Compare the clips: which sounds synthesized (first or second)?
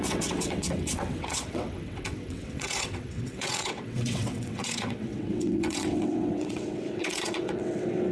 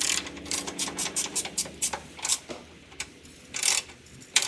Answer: first